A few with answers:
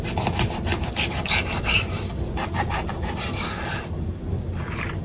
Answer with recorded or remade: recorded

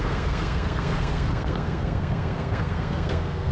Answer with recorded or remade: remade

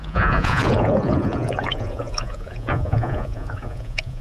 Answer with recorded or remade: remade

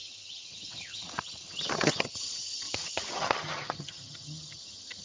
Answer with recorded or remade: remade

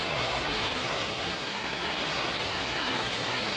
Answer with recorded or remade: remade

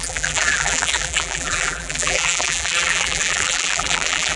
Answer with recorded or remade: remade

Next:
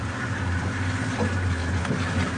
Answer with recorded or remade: recorded